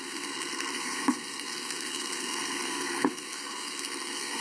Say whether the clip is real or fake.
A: fake